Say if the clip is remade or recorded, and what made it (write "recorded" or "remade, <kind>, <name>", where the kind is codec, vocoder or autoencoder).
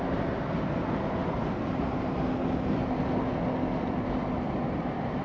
recorded